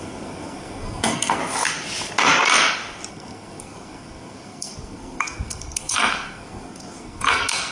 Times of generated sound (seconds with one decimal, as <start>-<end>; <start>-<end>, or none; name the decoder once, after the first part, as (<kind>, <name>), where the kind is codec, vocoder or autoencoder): 0.0-1.4 (codec, SNAC); 3.1-7.7